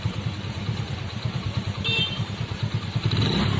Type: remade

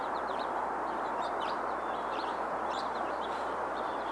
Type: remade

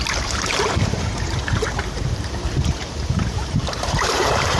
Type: remade